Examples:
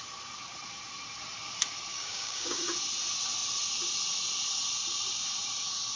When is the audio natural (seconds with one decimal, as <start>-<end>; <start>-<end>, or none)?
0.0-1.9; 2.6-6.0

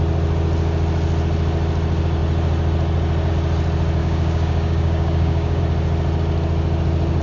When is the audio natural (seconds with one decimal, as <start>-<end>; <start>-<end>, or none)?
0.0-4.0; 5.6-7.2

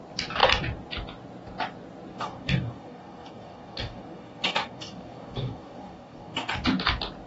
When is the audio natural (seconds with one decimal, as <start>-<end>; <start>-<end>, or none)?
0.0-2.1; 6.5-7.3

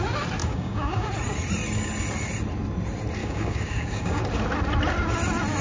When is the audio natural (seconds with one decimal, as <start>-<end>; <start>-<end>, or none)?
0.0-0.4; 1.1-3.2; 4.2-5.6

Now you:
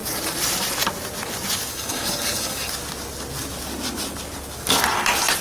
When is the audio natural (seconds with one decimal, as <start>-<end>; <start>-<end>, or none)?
0.0-1.7; 2.7-5.4

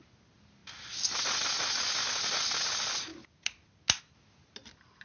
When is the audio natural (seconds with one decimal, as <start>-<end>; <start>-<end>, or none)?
0.0-5.0